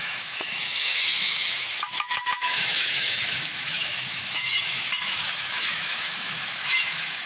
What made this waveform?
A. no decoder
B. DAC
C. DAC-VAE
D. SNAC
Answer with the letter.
C